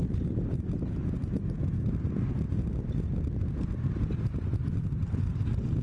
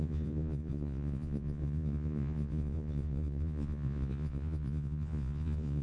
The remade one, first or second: second